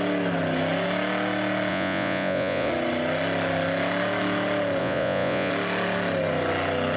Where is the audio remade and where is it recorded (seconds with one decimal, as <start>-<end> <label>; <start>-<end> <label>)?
0.0-1.7 recorded; 1.7-2.7 remade; 2.7-4.8 recorded; 4.8-5.5 remade; 5.5-7.0 recorded